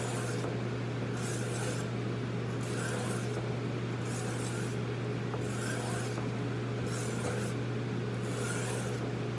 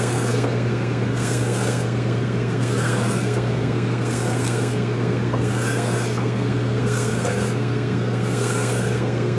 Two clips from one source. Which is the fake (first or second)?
second